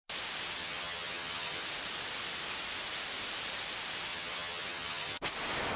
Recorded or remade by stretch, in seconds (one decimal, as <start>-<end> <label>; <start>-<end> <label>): 0.0-0.6 recorded; 0.6-1.6 remade; 1.6-4.1 recorded; 4.1-5.2 remade; 5.2-5.8 recorded